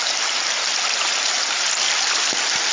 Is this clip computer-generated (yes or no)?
no